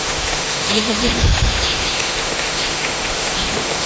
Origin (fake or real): fake